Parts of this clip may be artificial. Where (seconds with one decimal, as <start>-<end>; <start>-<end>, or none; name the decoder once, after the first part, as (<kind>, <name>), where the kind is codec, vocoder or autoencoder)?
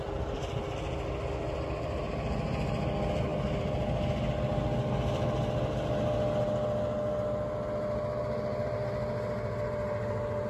none